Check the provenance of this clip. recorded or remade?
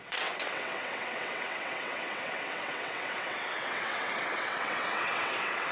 remade